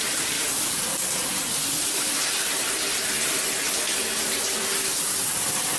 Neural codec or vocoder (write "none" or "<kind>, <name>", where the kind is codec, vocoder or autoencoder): none